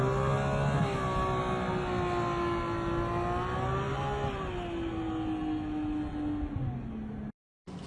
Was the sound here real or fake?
real